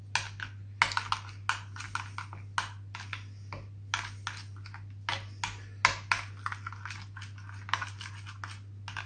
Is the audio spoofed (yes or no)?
no